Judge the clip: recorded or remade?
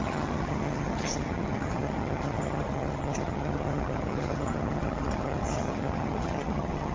remade